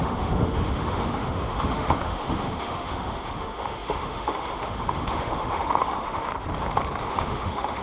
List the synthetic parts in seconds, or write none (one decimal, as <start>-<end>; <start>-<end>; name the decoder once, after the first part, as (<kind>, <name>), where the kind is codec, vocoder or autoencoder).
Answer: 0.0-6.3 (autoencoder, DAC-VAE); 7.1-7.8